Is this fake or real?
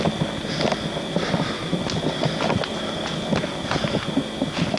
real